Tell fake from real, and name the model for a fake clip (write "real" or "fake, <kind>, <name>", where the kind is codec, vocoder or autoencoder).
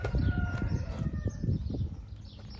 real